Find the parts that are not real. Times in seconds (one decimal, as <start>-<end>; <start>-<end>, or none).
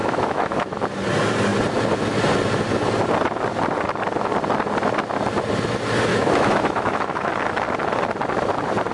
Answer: 0.0-0.8; 6.1-7.3